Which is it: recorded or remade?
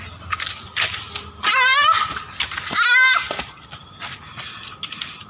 recorded